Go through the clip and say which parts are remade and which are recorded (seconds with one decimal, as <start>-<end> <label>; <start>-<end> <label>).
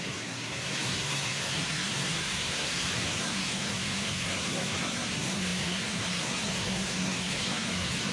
0.0-8.1 remade